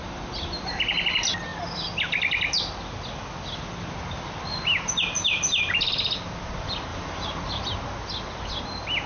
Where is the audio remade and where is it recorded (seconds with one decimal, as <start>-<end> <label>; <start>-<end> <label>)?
0.0-0.7 remade; 0.7-6.9 recorded; 6.9-7.4 remade; 7.4-9.1 recorded